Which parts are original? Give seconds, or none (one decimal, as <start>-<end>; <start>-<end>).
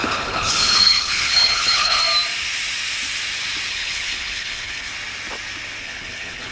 2.0-3.7; 4.9-5.8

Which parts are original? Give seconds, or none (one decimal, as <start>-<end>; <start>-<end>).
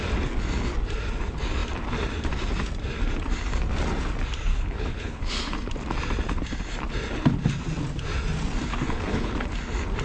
0.0-4.5; 5.3-8.7; 9.3-10.0